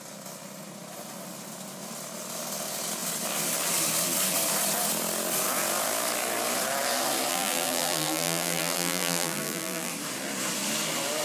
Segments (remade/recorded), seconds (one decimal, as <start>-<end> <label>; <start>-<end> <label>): 0.0-7.3 recorded; 7.3-9.9 remade; 9.9-11.2 recorded